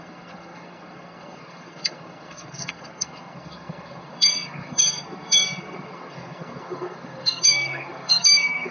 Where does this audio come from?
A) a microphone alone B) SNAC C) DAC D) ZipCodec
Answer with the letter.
B